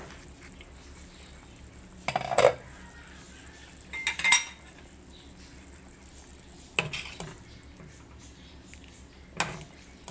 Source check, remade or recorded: recorded